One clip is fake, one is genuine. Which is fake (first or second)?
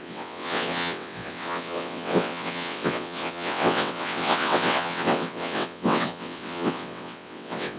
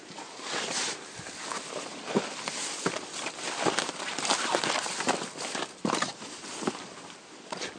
first